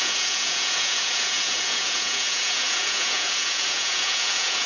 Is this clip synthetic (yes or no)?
yes